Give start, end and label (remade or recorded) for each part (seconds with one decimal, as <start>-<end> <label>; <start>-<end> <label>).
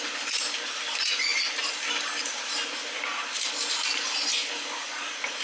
0.0-5.4 recorded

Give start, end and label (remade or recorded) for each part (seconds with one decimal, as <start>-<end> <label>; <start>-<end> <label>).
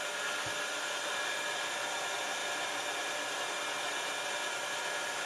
0.0-5.3 recorded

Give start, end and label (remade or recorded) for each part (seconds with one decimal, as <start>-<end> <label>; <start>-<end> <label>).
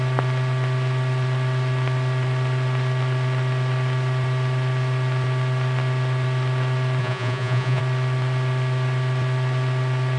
0.0-7.0 recorded; 7.0-7.8 remade; 7.8-10.2 recorded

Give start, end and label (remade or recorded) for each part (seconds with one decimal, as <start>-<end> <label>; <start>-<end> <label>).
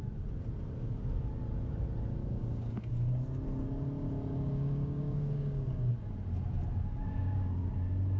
0.0-2.2 recorded; 2.2-2.9 remade; 2.9-4.3 recorded; 4.3-5.9 remade; 5.9-7.0 recorded; 7.0-7.7 remade; 7.7-8.2 recorded